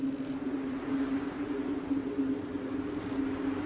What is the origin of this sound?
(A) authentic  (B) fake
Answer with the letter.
A